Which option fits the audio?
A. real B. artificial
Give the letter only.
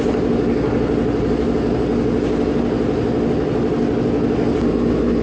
A